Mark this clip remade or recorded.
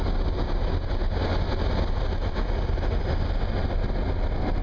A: recorded